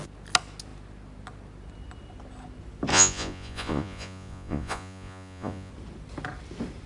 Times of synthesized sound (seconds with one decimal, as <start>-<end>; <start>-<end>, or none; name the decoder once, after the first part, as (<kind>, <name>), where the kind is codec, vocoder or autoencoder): 2.9-5.7 (vocoder, Vocos)